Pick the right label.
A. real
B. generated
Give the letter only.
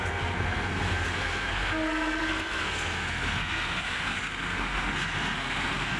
B